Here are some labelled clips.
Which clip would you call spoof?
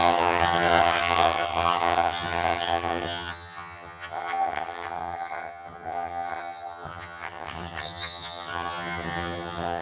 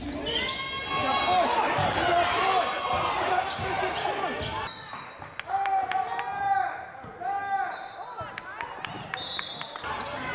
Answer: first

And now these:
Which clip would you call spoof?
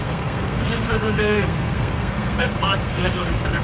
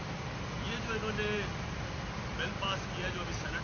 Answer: first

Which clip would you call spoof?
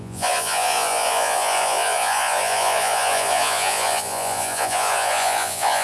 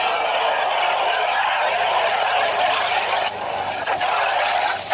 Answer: first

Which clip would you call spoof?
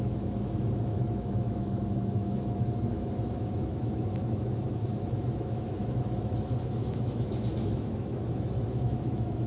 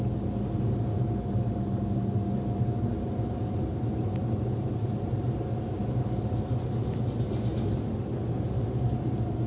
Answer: first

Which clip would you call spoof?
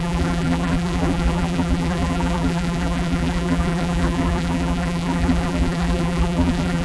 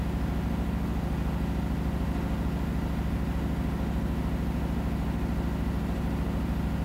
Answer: first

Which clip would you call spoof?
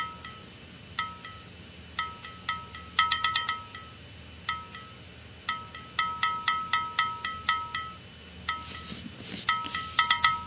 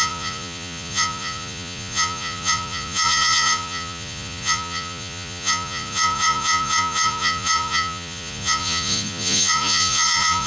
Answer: second